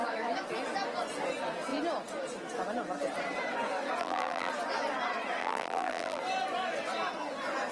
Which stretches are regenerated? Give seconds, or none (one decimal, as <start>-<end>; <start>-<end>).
4.0-4.5; 5.4-6.2